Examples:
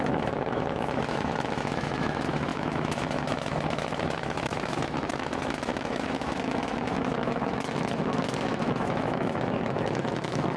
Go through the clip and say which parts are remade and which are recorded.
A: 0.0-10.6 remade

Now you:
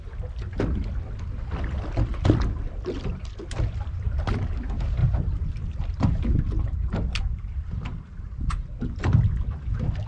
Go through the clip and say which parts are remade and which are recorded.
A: 0.0-10.1 recorded

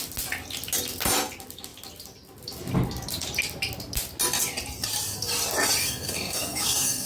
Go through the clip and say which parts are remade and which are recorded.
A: 0.0-5.8 recorded; 5.8-7.1 remade

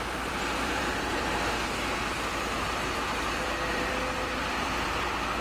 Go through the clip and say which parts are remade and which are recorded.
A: 0.0-1.1 remade; 1.1-2.1 recorded; 2.1-5.4 remade

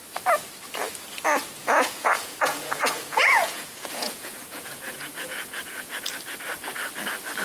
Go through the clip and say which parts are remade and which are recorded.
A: 0.0-1.6 recorded; 1.6-6.0 remade; 6.0-7.4 recorded

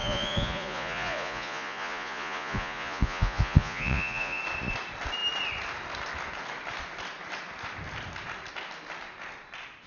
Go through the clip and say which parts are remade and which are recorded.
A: 0.0-4.4 remade; 4.4-9.9 recorded

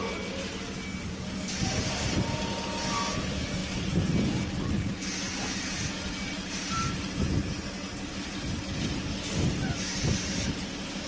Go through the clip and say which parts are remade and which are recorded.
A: 0.0-11.1 recorded